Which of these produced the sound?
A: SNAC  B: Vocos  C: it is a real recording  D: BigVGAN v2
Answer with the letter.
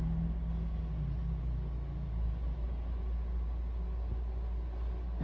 C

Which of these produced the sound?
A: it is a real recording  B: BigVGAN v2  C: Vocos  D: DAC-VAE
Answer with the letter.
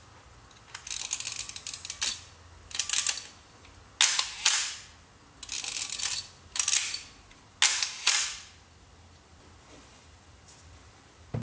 A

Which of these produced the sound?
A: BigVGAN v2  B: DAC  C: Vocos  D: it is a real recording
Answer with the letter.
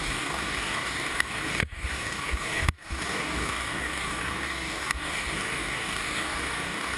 B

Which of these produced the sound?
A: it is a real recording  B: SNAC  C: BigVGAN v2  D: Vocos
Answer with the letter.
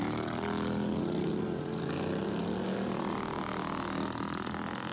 A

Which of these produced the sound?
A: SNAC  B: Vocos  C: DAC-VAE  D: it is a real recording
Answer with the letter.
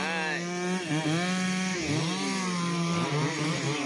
D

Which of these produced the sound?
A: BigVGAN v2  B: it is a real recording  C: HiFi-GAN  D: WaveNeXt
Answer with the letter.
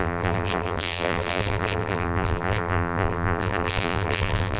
A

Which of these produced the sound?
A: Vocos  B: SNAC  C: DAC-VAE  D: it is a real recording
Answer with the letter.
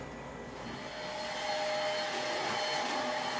D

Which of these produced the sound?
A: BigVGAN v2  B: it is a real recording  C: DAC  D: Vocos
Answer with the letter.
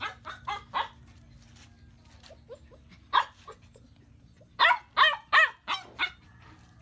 B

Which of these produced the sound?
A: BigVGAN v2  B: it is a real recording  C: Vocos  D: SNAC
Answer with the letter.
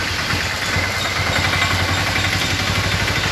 B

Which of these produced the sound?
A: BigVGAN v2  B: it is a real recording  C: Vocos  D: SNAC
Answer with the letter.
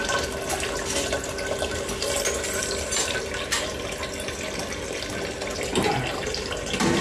B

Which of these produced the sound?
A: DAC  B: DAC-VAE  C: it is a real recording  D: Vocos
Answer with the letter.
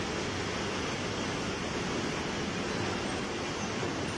C